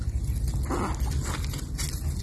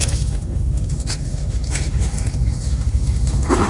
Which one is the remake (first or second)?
second